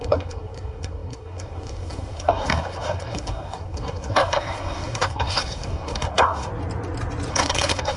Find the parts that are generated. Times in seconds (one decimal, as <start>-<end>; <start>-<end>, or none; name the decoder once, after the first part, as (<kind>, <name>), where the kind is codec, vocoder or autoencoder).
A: 0.0-6.5 (codec, SNAC); 7.3-8.0